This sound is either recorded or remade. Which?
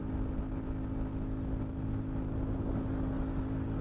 recorded